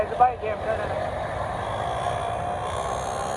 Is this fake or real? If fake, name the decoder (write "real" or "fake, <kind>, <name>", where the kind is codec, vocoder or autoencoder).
real